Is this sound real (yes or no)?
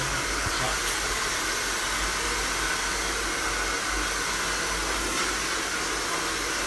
yes